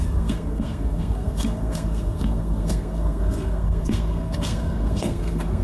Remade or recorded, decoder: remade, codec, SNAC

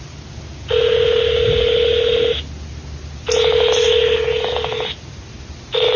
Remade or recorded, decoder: recorded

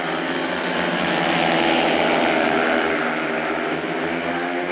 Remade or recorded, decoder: recorded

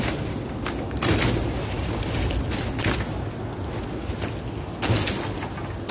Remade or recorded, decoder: recorded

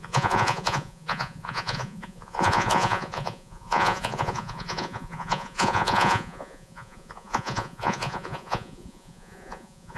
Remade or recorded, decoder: remade, vocoder, Vocos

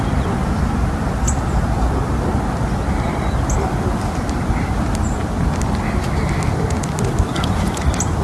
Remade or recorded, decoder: recorded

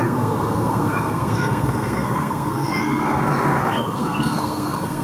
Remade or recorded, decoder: remade, codec, SNAC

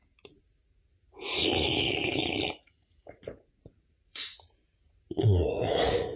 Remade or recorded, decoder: remade, vocoder, Vocos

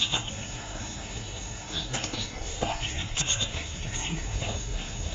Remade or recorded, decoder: remade, codec, SNAC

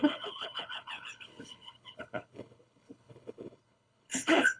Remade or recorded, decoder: remade, codec, HILCodec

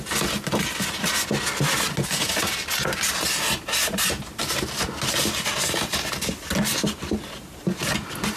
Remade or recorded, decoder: recorded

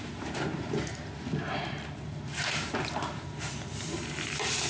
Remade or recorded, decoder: remade, vocoder, BigVGAN v2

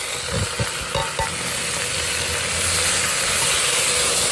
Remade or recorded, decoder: recorded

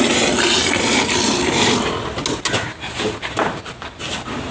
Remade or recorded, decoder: recorded